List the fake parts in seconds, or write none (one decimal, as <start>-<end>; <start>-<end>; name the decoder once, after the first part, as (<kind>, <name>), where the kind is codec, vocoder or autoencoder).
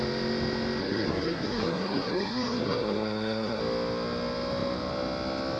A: 0.8-3.6 (codec, SNAC)